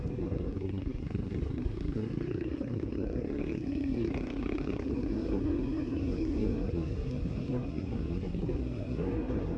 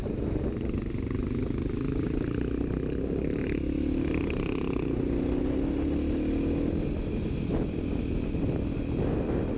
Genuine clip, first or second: second